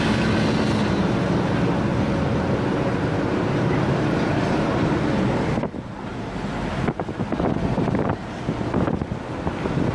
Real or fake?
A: real